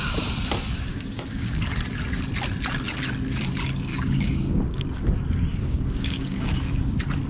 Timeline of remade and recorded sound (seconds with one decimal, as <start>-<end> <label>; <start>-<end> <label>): 0.0-0.9 recorded; 0.9-1.6 remade; 1.6-3.9 recorded; 3.9-4.8 remade; 4.8-5.5 recorded; 5.5-6.5 remade; 6.5-7.3 recorded